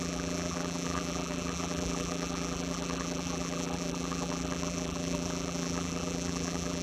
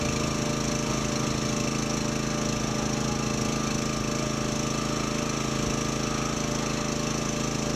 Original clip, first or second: second